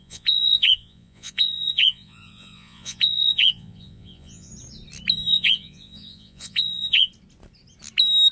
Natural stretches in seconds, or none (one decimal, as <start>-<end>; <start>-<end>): 4.5-5.3; 7.1-8.3